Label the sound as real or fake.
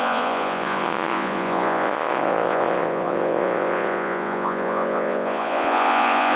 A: fake